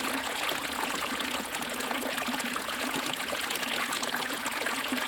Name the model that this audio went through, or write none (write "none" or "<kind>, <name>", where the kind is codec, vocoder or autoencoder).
vocoder, Vocos